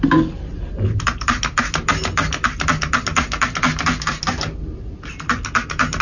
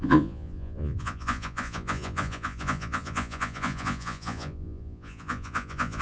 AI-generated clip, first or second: second